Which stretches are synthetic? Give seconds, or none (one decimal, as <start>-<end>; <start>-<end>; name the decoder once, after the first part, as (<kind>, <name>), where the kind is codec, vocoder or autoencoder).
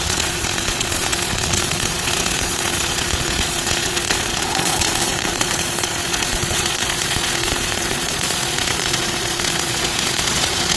0.0-10.8 (vocoder, Vocos)